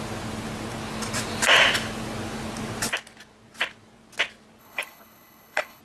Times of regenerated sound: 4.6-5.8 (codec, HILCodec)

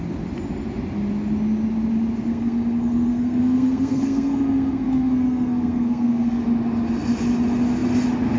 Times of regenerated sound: 2.3-6.4 (codec, SNAC)

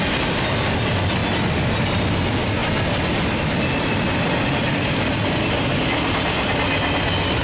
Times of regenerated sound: none

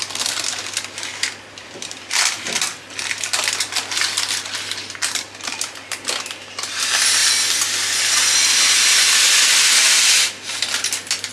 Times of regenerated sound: none

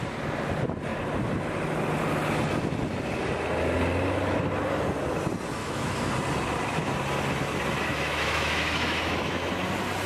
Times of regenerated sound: 5.6-6.1 (autoencoder, DAC-VAE); 7.9-9.5

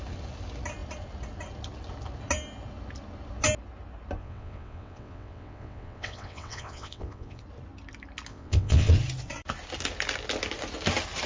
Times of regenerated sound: 4.2-7.4 (vocoder, WaveNeXt); 8.3-8.9

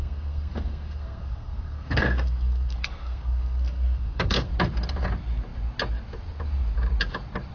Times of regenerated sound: 0.0-4.5 (codec, SNAC)